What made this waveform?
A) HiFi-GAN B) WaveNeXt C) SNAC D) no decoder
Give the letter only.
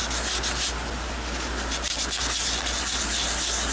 D